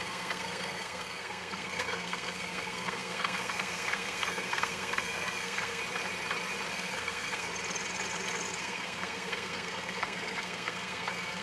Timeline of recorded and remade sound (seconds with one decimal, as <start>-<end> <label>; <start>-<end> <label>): 0.0-5.8 remade; 5.8-6.7 recorded; 6.7-7.5 remade; 7.5-8.6 recorded; 8.6-11.4 remade